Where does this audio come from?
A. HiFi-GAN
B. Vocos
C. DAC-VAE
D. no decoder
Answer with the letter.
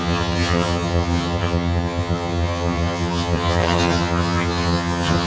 A